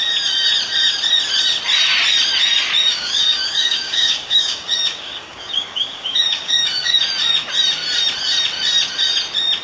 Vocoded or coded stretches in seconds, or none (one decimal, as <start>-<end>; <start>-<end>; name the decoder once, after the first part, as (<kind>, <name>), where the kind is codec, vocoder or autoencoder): 2.9-7.0 (codec, DAC)